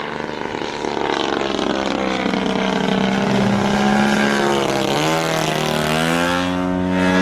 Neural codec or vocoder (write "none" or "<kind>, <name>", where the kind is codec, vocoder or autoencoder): none